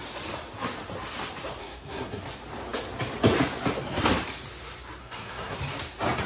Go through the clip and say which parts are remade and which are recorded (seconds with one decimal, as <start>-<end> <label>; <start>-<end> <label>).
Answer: 0.0-1.6 recorded; 1.6-2.2 remade; 2.2-5.0 recorded; 5.0-5.6 remade; 5.6-6.3 recorded